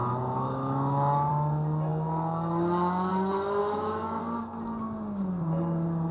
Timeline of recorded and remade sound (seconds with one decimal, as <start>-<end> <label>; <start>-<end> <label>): 0.0-1.3 remade; 1.3-3.6 recorded; 3.6-4.2 remade; 4.2-6.1 recorded